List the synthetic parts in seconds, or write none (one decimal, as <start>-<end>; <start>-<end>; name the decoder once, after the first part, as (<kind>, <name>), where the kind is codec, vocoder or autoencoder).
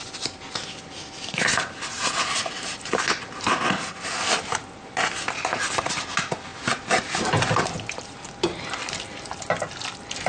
none